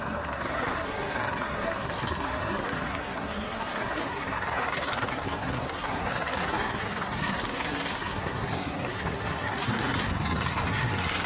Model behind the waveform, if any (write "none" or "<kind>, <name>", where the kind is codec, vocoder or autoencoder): codec, SNAC